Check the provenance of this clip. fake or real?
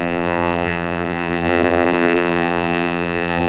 fake